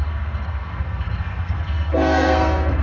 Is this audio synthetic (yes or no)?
yes